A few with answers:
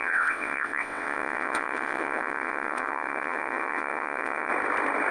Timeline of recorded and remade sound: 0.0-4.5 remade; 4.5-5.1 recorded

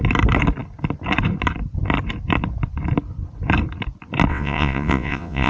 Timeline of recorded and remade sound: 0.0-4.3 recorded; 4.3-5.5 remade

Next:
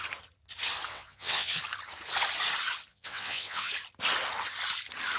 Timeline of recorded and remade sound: 0.0-0.9 recorded; 0.9-1.6 remade; 1.6-2.9 recorded; 2.9-3.7 remade; 3.7-5.2 recorded

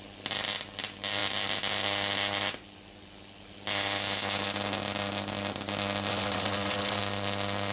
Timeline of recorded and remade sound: 0.0-6.1 recorded; 6.1-7.0 remade; 7.0-7.7 recorded

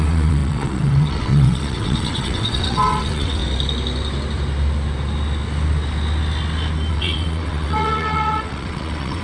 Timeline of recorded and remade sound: 0.0-3.4 remade; 3.4-6.9 recorded; 6.9-9.2 remade

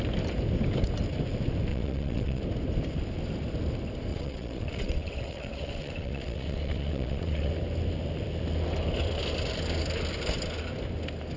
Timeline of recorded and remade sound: 0.0-1.7 recorded; 1.7-2.4 remade; 2.4-4.1 recorded; 4.1-7.5 remade; 7.5-11.4 recorded

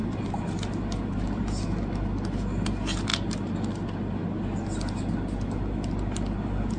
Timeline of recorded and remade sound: 0.0-6.8 recorded